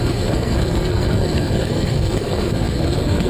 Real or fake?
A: fake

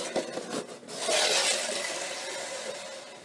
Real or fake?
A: real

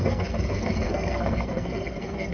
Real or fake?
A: fake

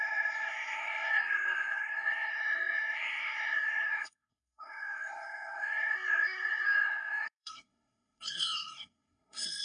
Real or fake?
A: fake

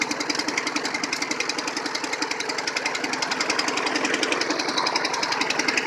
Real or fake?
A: real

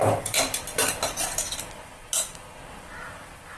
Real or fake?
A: real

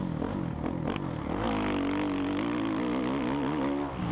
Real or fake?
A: real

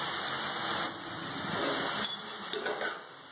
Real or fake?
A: real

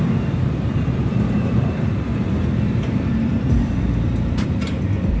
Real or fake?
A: fake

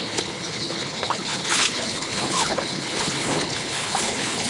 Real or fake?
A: fake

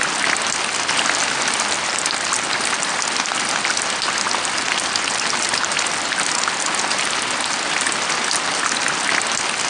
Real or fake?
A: real